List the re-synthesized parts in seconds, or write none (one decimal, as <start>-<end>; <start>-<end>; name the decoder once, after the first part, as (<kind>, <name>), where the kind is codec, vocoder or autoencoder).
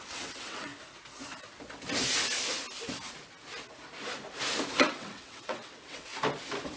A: 0.0-0.7 (vocoder, WaveNeXt); 4.8-6.1